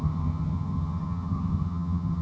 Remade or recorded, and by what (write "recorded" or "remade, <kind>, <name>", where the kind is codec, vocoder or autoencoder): remade, vocoder, HiFi-GAN